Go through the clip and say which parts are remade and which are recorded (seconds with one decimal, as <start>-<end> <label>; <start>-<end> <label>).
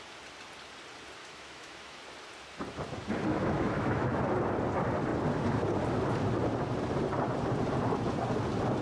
0.0-1.2 recorded; 1.2-2.0 remade; 2.0-3.3 recorded; 3.3-4.2 remade; 4.2-8.8 recorded